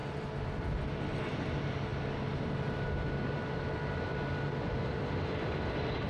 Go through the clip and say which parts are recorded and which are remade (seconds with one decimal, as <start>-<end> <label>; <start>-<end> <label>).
0.0-1.9 recorded; 1.9-5.6 remade; 5.6-6.1 recorded